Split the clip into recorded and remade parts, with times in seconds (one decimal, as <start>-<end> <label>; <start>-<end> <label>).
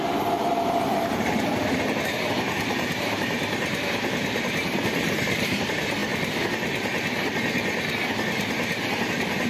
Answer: 0.0-6.0 remade; 6.0-9.1 recorded; 9.1-9.5 remade